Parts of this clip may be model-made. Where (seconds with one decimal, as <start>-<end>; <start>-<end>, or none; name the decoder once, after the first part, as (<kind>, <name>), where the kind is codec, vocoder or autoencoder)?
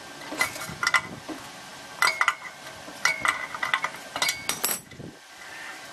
none